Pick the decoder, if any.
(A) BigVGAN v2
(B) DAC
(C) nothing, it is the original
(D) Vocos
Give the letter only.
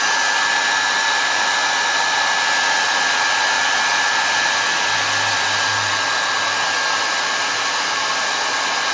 C